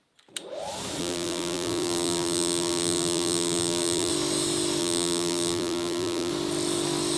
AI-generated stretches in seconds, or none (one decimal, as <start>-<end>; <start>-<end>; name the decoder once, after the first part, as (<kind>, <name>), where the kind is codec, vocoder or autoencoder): 1.0-4.1 (vocoder, BigVGAN v2); 4.8-6.3